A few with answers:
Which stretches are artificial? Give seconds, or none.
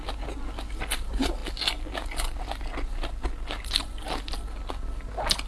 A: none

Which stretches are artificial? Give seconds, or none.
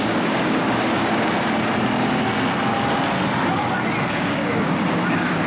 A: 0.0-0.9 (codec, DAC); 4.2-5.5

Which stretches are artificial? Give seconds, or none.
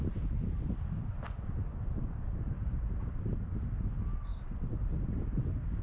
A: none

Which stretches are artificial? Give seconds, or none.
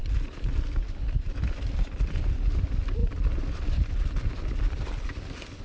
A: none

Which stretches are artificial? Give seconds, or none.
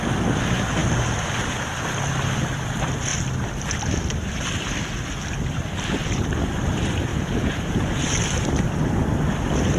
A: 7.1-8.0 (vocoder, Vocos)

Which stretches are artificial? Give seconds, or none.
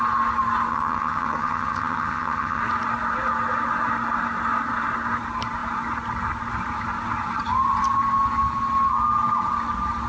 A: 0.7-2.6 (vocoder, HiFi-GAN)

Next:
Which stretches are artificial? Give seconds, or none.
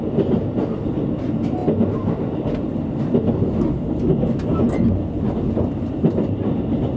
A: none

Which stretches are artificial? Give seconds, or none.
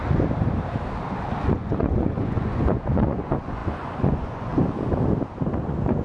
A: 1.5-4.5 (vocoder, Vocos); 5.6-6.0